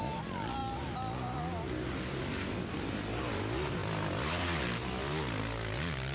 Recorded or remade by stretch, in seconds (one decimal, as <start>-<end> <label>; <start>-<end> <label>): 0.0-6.1 recorded